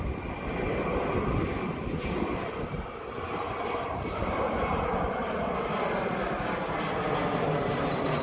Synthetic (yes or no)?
no